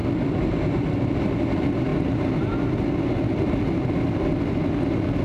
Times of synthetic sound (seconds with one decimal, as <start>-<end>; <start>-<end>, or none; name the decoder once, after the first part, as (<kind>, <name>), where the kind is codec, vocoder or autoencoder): none